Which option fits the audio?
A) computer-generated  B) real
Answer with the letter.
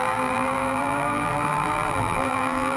A